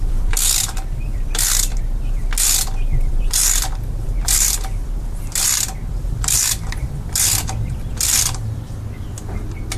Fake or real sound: fake